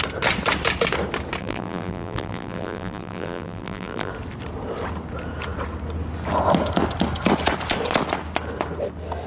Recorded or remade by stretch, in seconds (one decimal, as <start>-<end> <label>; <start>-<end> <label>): 0.0-1.4 recorded; 1.4-4.1 remade; 4.1-9.3 recorded